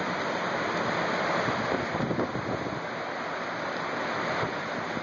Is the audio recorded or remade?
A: recorded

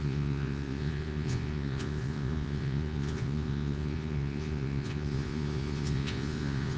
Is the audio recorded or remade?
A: remade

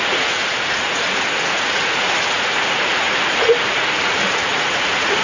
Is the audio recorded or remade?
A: remade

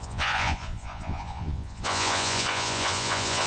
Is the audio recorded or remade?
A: remade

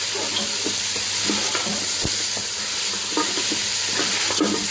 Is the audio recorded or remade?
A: recorded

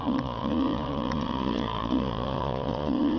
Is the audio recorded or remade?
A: remade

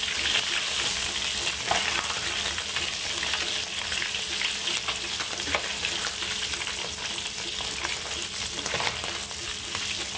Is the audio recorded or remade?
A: recorded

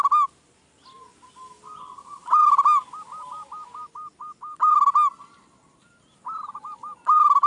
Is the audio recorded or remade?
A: recorded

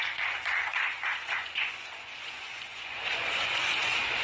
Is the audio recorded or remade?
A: remade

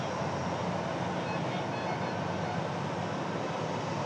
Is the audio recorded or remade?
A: recorded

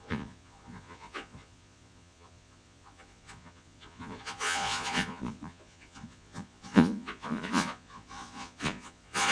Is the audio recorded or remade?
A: remade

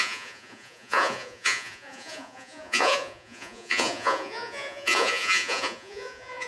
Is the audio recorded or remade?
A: remade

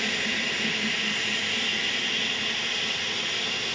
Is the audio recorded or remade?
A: recorded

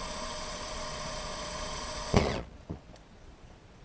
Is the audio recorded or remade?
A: remade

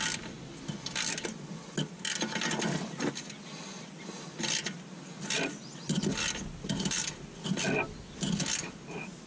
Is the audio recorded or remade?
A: recorded